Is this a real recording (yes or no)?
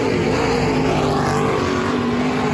yes